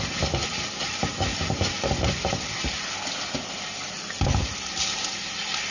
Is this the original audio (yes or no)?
yes